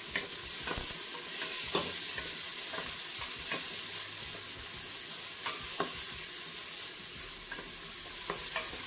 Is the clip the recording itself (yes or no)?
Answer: yes